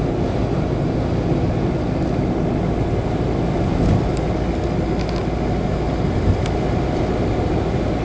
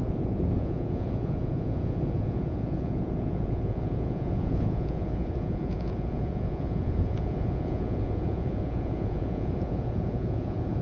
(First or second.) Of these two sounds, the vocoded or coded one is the second